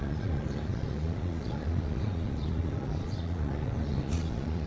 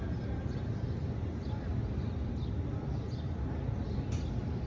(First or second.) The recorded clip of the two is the second